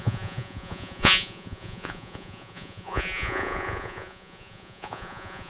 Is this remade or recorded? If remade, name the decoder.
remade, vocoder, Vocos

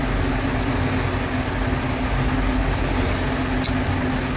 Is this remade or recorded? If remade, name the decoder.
recorded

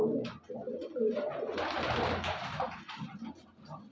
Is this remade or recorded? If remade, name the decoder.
recorded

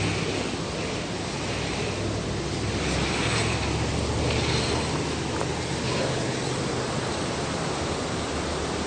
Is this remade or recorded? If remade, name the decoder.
recorded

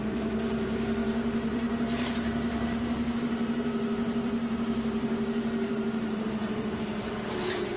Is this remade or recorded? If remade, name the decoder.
remade, vocoder, BigVGAN v2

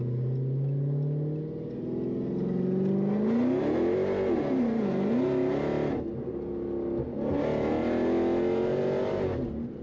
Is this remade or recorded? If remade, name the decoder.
recorded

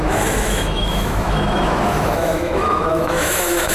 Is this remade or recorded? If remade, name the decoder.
remade, autoencoder, DAC-VAE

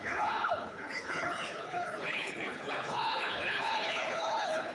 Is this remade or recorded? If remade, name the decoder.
remade, codec, HILCodec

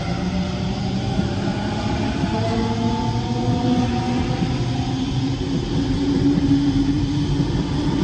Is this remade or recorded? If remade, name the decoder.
recorded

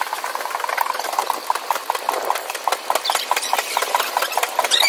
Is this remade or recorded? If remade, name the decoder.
recorded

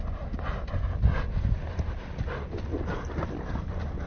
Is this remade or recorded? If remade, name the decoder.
recorded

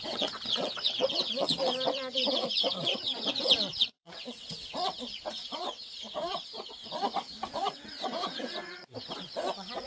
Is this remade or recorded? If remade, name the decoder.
remade, vocoder, WaveNeXt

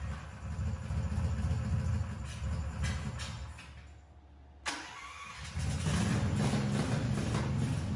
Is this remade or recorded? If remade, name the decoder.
recorded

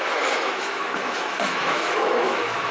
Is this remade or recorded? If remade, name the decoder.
remade, autoencoder, DAC-VAE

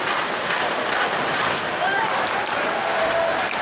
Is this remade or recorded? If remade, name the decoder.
recorded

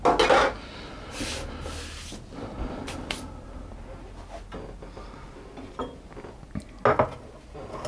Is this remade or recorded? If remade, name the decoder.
recorded